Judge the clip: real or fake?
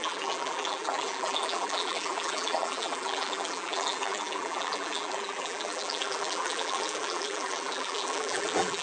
fake